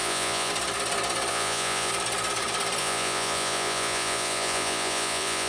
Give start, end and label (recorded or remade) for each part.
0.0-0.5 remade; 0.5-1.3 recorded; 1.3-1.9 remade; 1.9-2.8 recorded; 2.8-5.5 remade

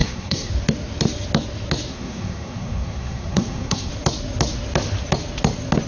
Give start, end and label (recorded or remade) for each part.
0.0-0.5 remade; 0.5-1.9 recorded; 1.9-3.9 remade; 3.9-5.9 recorded

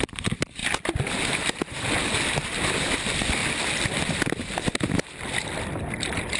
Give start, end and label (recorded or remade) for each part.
0.0-6.4 recorded

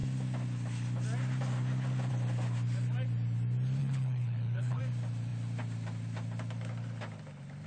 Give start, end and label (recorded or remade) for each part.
0.0-3.8 recorded; 3.8-4.8 remade; 4.8-7.7 recorded